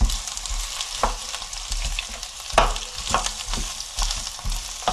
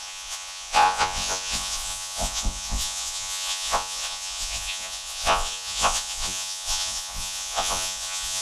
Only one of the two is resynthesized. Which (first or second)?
second